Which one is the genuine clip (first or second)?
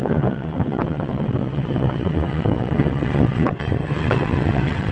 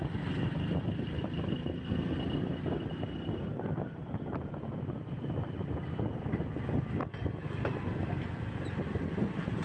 second